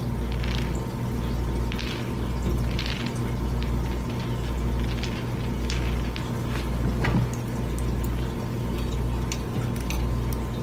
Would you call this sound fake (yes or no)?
no